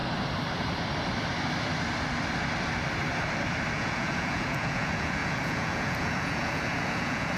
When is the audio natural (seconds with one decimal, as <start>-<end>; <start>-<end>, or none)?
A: 0.0-3.7